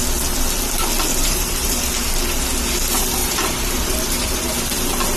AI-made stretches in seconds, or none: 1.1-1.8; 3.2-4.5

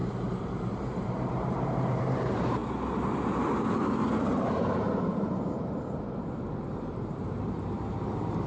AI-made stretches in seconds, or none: 0.0-2.6; 4.5-8.5

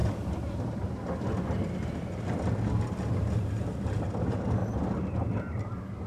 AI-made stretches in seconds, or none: 0.0-4.6; 5.6-6.1

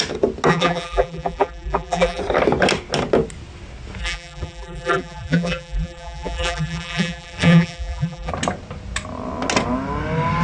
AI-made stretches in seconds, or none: 0.5-2.2; 4.0-8.3

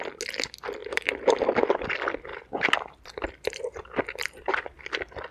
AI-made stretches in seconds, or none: 0.8-1.5; 2.3-4.8

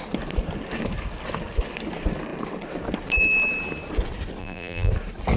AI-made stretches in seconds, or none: 4.4-4.9